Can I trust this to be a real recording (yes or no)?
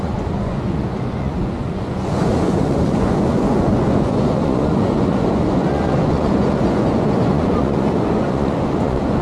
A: no